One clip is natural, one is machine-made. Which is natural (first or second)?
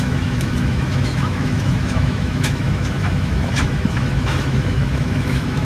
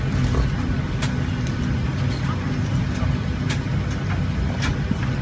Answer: second